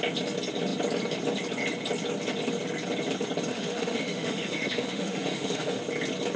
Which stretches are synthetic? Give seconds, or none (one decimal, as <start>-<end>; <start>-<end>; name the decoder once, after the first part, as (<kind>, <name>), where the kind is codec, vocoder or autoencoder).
3.5-5.8 (autoencoder, DAC-VAE)